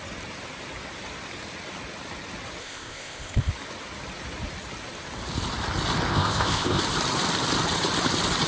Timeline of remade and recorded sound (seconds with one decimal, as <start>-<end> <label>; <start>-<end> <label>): 0.0-2.6 recorded; 2.6-3.5 remade; 3.5-6.1 recorded; 6.1-6.8 remade; 6.8-8.5 recorded